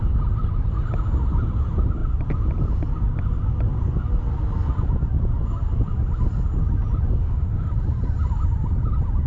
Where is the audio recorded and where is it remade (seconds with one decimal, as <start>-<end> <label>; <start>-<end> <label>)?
0.0-7.2 recorded; 7.2-7.7 remade; 7.7-9.3 recorded